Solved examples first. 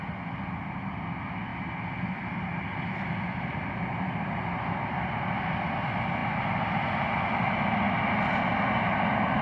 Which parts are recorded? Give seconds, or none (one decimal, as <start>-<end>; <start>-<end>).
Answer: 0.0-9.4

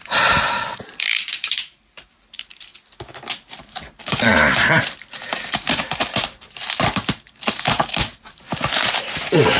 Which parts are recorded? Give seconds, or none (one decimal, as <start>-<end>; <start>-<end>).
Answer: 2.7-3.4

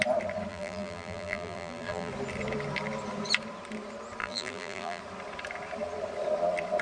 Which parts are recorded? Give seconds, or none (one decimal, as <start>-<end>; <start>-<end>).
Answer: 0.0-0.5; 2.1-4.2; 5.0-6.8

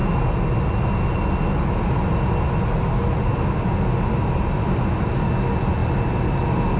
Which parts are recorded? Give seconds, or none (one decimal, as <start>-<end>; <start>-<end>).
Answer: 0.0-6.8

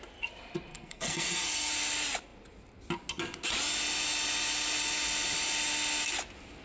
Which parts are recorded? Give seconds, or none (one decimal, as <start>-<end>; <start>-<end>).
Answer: 0.0-0.7; 1.7-6.6